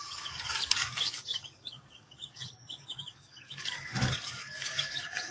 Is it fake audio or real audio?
fake